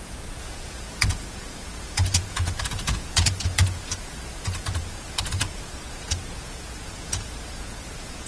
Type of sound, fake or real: fake